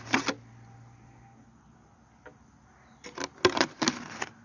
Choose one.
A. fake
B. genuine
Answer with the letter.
B